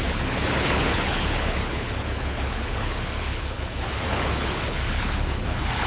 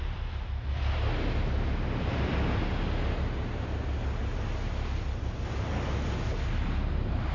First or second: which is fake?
first